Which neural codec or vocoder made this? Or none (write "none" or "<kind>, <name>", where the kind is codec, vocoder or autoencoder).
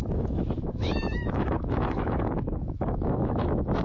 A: autoencoder, DAC-VAE